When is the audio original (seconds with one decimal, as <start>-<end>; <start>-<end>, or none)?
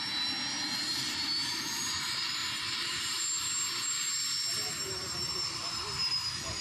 0.0-2.4